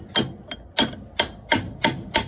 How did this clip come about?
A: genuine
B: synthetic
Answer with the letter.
A